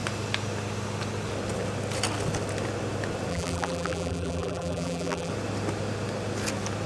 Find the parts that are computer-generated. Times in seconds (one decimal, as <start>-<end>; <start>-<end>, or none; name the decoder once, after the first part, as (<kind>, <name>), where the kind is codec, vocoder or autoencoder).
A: 3.3-5.3 (vocoder, BigVGAN v2)